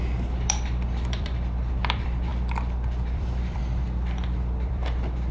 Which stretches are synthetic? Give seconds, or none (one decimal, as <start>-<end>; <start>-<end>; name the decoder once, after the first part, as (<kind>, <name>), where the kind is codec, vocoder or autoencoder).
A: 0.0-5.3 (vocoder, BigVGAN v2)